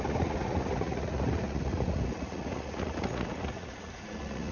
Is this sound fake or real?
fake